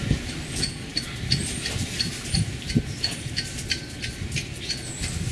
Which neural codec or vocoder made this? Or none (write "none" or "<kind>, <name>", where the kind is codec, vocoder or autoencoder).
none